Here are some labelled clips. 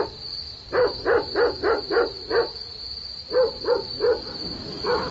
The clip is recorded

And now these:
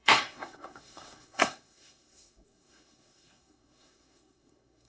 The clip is remade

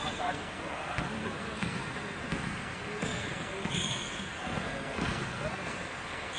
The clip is remade